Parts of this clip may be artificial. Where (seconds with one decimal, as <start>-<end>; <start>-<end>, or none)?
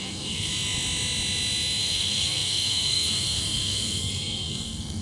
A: 0.0-0.5; 1.8-5.0